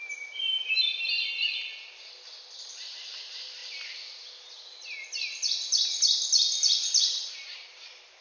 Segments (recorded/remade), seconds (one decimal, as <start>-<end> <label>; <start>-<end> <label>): 0.0-8.2 recorded